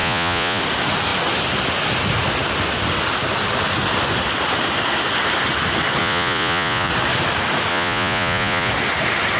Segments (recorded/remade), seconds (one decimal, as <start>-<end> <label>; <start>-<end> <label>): 0.0-0.6 remade; 0.6-6.0 recorded; 6.0-6.9 remade; 6.9-7.7 recorded; 7.7-8.7 remade; 8.7-9.4 recorded